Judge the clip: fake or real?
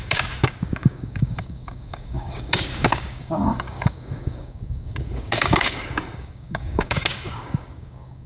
fake